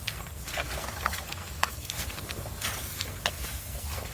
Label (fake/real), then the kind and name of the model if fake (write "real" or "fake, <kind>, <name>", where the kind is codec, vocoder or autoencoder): fake, codec, SNAC